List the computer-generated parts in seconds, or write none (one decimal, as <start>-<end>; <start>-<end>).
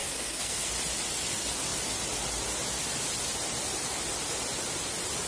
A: 0.0-0.7